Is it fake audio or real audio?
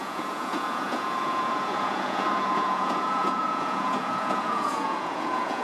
fake